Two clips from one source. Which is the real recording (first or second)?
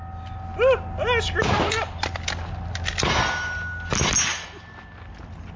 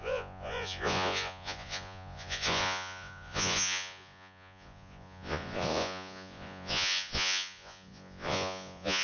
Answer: first